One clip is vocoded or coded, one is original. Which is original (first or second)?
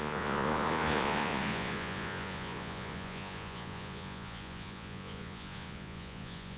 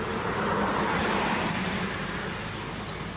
second